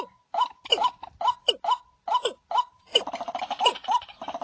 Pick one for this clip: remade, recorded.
recorded